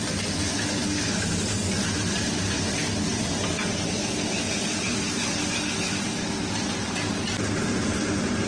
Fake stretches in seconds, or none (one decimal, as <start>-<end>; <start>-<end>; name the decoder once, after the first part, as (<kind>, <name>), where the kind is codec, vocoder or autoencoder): none